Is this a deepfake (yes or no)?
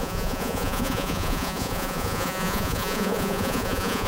yes